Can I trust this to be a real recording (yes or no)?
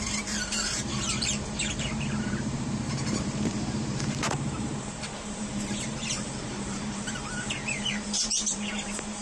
no